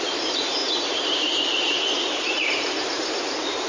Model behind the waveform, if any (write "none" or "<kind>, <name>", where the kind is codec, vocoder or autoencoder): vocoder, BigVGAN v2